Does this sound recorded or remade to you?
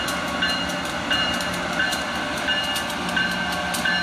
recorded